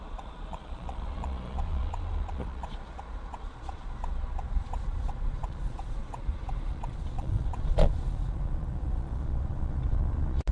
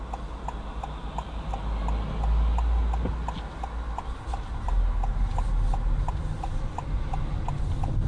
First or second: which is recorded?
second